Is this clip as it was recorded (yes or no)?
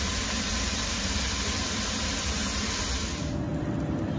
yes